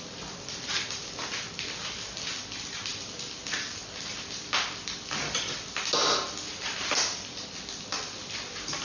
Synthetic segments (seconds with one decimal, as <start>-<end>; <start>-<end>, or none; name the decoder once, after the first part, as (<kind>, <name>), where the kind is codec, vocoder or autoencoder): none